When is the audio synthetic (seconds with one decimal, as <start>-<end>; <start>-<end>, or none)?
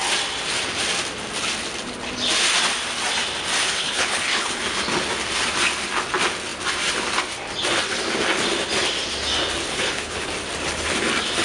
3.6-4.6; 9.7-10.3